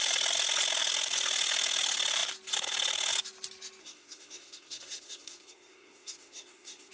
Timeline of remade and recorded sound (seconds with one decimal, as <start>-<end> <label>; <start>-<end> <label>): 0.0-3.8 recorded; 3.8-6.9 remade